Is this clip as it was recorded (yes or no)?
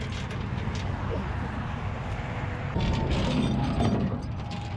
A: yes